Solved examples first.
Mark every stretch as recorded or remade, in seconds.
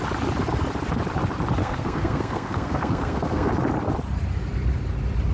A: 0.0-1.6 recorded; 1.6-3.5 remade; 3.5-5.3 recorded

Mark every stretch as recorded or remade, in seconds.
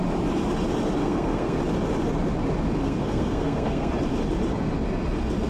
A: 0.0-1.0 recorded; 1.0-1.6 remade; 1.6-2.8 recorded; 2.8-3.9 remade; 3.9-5.5 recorded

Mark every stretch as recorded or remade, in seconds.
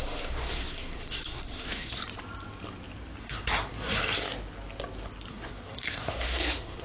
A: 0.0-2.0 remade; 2.0-3.2 recorded; 3.2-4.0 remade; 4.0-5.3 recorded; 5.3-6.8 remade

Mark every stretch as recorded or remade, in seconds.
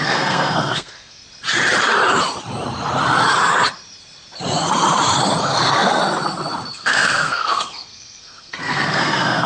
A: 0.0-1.2 remade; 1.2-5.4 recorded; 5.4-6.0 remade; 6.0-6.7 recorded; 6.7-9.5 remade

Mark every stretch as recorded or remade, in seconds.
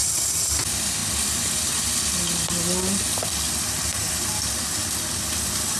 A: 0.0-5.8 recorded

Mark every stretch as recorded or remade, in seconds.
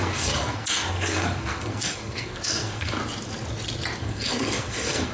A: 0.0-3.0 remade; 3.0-4.0 recorded; 4.0-5.1 remade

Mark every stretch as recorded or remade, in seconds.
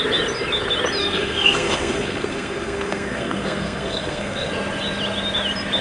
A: 0.0-1.0 recorded; 1.0-4.5 remade; 4.5-5.8 recorded